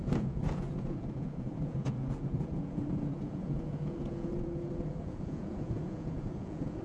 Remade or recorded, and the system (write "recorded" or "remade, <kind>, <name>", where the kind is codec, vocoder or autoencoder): remade, vocoder, Vocos